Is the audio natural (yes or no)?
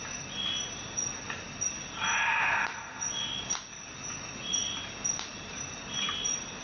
yes